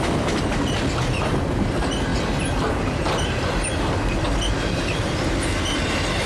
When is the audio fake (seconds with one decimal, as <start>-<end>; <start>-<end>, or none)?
none